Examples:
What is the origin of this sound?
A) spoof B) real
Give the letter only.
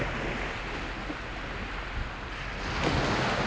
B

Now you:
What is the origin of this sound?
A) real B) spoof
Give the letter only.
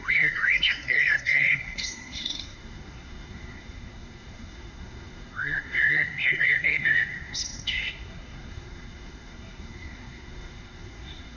B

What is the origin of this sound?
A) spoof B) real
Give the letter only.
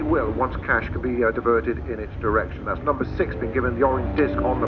B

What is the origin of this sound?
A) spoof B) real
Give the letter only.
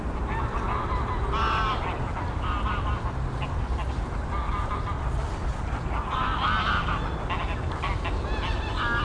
B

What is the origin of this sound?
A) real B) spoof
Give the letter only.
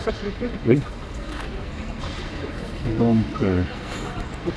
B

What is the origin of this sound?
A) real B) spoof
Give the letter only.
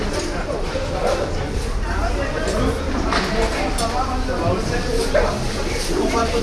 A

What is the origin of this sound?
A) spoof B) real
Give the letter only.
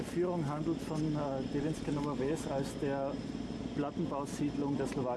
B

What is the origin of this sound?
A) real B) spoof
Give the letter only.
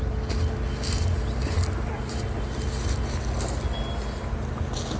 A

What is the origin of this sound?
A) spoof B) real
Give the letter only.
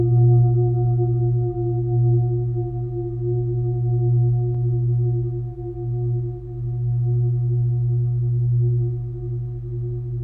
B